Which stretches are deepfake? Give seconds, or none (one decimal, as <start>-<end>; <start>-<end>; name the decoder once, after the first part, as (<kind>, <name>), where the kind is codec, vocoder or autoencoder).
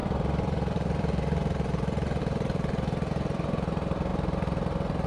0.0-2.2 (vocoder, BigVGAN v2)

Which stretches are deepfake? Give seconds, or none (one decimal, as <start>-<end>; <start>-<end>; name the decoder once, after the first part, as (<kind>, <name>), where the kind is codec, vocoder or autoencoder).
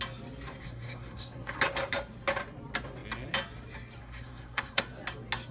0.6-1.6 (codec, SNAC); 4.0-4.8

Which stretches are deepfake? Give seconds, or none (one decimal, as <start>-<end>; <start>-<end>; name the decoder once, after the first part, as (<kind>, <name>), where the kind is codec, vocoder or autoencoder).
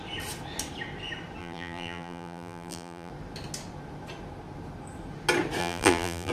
1.4-3.1 (vocoder, BigVGAN v2); 5.6-6.3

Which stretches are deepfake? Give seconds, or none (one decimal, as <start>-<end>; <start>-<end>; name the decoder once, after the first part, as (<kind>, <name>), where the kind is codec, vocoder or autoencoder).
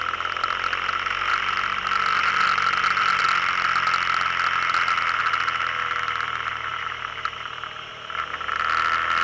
1.3-3.2 (vocoder, BigVGAN v2); 6.7-7.9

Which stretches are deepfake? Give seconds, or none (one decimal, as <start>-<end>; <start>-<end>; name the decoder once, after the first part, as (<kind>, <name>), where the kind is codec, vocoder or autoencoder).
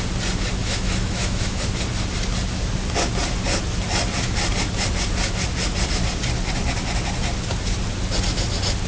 0.6-1.6 (autoencoder, DAC-VAE)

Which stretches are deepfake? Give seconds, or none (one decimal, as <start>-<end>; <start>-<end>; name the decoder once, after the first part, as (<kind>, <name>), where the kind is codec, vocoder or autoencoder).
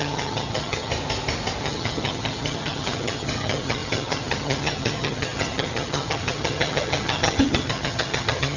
0.0-0.9 (vocoder, HiFi-GAN); 1.6-8.6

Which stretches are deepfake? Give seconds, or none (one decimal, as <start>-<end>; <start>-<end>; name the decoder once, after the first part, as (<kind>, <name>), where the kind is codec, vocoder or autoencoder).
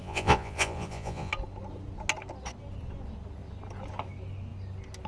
0.0-1.3 (vocoder, Vocos)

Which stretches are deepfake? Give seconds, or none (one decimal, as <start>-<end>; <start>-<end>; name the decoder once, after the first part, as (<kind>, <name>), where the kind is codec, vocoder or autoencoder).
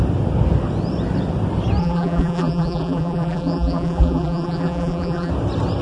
1.8-5.3 (vocoder, BigVGAN v2)